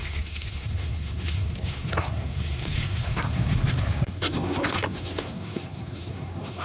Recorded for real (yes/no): no